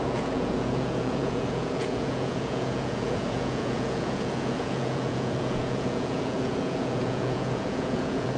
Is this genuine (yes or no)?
no